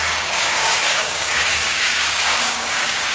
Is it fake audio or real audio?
fake